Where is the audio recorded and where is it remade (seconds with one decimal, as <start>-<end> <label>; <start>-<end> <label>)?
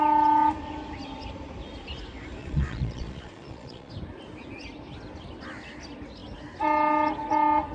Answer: 0.0-2.4 recorded; 2.4-3.9 remade; 3.9-7.7 recorded